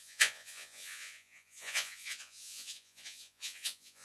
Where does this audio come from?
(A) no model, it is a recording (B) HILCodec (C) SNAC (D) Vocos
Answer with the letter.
D